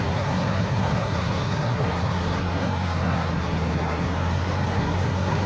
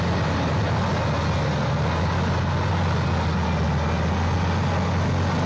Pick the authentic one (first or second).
second